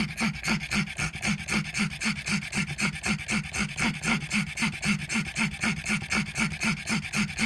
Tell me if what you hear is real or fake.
real